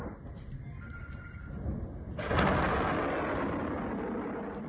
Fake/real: real